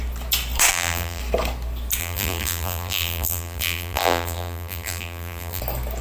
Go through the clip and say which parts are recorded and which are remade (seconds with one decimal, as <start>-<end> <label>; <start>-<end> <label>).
0.0-0.7 recorded; 0.7-1.2 remade; 1.2-2.0 recorded; 2.0-5.6 remade; 5.6-6.0 recorded